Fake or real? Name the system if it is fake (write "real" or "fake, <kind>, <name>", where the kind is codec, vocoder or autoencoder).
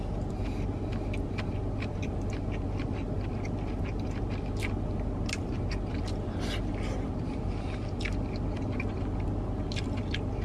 real